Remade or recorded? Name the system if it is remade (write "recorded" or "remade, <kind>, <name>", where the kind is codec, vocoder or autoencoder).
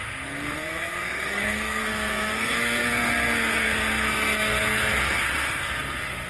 remade, codec, SNAC